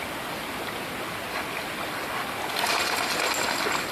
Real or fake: real